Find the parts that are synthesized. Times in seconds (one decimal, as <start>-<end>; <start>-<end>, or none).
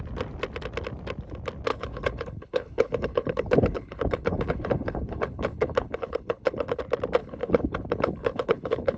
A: 1.7-6.8; 7.2-9.0